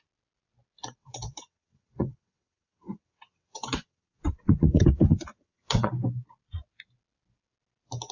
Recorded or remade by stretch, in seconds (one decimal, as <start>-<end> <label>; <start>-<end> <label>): 0.0-1.0 recorded; 1.0-5.9 remade; 5.9-8.1 recorded